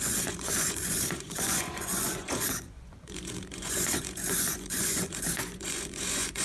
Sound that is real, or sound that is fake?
fake